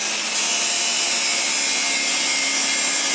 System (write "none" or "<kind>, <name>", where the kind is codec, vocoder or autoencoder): none